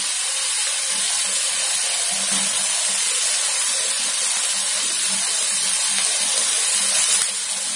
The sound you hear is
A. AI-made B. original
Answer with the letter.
B